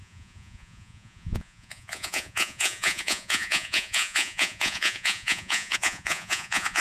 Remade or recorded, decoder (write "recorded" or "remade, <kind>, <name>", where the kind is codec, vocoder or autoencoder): remade, vocoder, Vocos